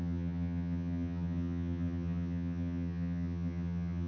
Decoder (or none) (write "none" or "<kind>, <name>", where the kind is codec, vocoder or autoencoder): vocoder, HiFi-GAN